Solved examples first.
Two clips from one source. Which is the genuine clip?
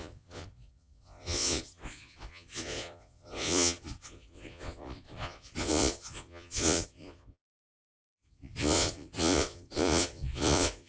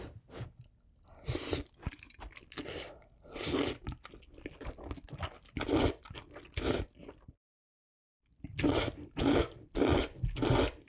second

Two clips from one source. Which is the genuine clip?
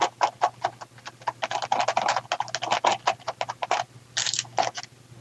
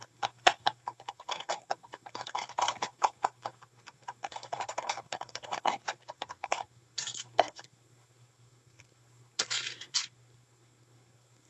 first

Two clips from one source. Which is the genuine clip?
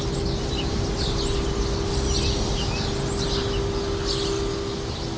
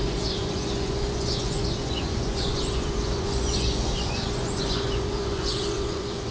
first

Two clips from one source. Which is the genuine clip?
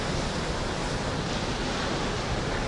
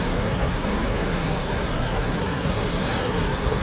first